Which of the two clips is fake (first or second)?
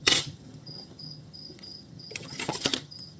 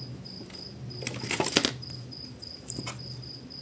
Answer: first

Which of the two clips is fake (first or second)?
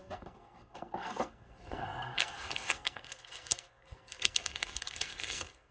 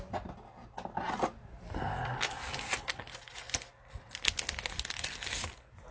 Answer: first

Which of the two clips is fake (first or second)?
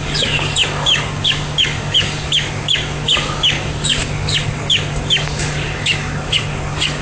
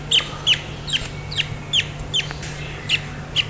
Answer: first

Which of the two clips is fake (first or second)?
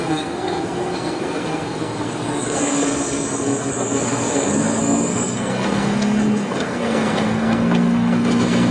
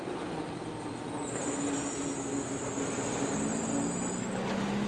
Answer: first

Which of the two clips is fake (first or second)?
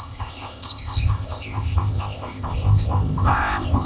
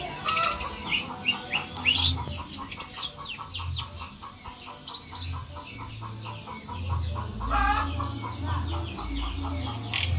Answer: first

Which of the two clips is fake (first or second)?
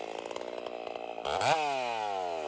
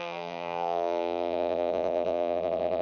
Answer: second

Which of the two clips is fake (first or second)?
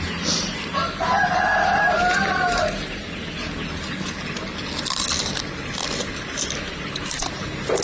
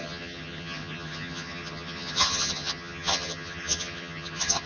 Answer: second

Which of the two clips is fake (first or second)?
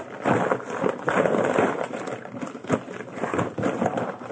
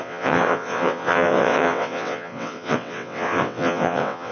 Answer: second